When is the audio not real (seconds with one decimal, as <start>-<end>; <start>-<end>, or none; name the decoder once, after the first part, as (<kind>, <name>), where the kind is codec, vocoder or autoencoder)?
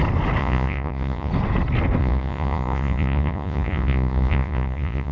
0.4-1.3 (vocoder, Vocos); 2.0-5.1